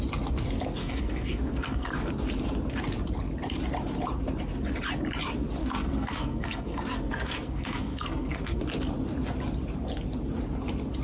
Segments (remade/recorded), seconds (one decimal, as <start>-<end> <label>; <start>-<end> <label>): 0.0-0.8 recorded; 0.8-2.1 remade; 2.1-5.6 recorded; 5.6-8.6 remade; 8.6-11.0 recorded